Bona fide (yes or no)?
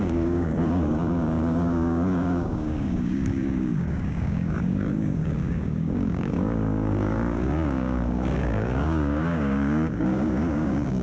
no